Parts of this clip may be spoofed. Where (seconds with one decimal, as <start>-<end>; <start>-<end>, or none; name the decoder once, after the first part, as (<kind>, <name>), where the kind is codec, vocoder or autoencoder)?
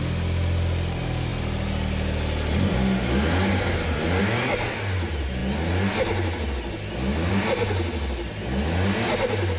none